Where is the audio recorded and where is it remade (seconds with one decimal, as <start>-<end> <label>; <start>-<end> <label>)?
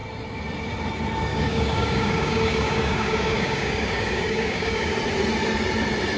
0.0-1.3 recorded; 1.3-4.9 remade; 4.9-6.2 recorded